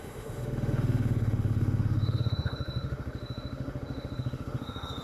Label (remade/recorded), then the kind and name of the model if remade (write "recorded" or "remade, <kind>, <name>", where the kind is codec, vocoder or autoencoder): remade, autoencoder, DAC-VAE